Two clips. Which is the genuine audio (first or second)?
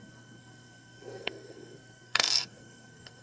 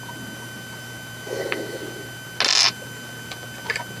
second